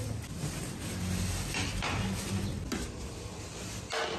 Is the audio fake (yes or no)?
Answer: no